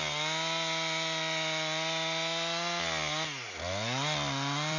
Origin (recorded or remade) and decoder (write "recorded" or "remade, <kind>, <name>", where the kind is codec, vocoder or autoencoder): recorded